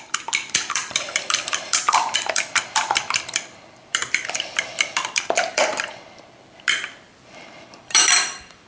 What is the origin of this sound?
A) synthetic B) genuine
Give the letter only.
A